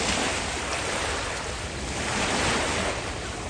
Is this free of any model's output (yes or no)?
yes